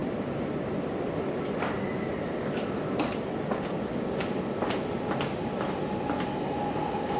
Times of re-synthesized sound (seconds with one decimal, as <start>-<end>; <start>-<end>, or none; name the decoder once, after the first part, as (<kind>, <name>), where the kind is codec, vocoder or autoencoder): none